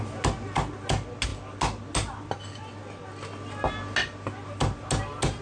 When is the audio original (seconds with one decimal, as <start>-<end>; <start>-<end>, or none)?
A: 0.0-5.4